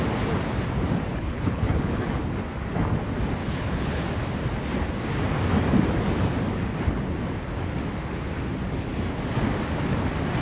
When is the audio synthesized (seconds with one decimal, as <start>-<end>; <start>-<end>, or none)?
1.1-2.2; 3.4-4.0